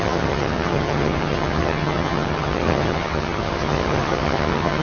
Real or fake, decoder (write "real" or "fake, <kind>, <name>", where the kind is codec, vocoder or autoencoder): fake, vocoder, HiFi-GAN